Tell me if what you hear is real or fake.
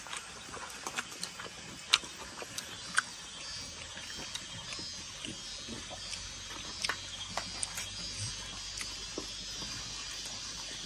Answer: real